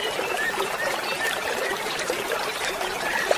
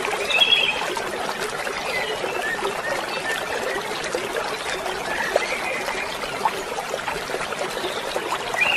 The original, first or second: second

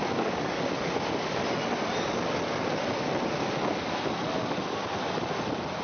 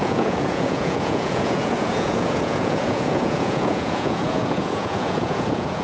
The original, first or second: first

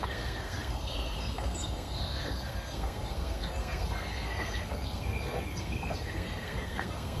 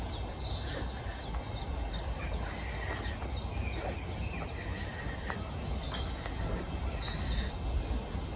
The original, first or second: second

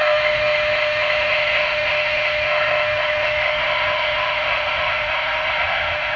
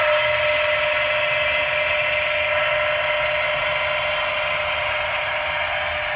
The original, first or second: second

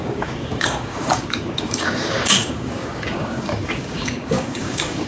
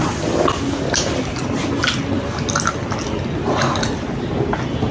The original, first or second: second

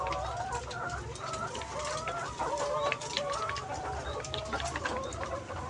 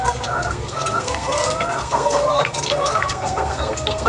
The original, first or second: first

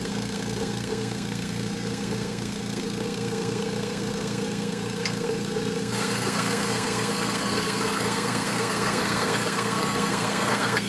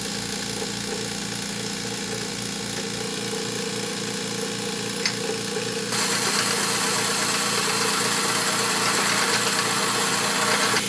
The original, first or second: second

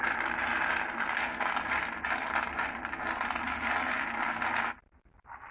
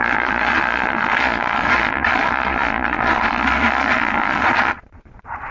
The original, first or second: first